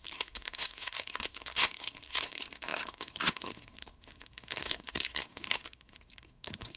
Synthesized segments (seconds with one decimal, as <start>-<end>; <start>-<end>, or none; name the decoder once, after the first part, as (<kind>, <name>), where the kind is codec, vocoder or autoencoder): 0.0-6.8 (codec, SNAC)